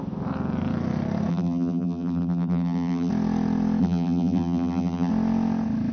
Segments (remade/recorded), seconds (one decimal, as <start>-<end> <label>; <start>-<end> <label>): 0.0-1.3 recorded; 1.3-3.1 remade; 3.1-3.8 recorded; 3.8-5.1 remade; 5.1-5.9 recorded